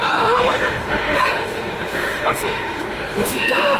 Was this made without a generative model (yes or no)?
no